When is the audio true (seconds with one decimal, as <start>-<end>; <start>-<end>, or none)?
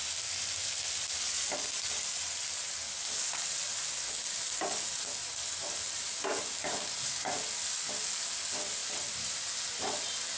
0.0-10.4